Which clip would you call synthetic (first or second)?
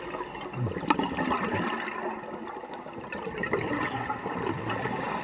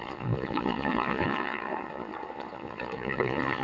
second